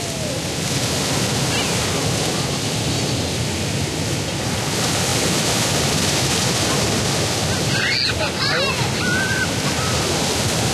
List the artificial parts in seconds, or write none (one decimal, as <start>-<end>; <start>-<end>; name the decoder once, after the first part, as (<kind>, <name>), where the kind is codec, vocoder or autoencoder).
none